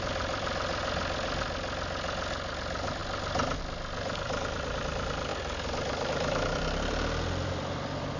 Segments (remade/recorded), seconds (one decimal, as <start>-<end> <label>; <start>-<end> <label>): 0.0-0.8 remade; 0.8-2.5 recorded; 2.5-3.0 remade; 3.0-3.6 recorded; 3.6-8.2 remade